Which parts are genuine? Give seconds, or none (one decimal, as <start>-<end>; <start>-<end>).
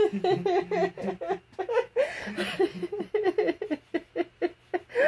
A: 0.0-5.1